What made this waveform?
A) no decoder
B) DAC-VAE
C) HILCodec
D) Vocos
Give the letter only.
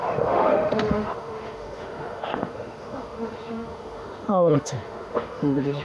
B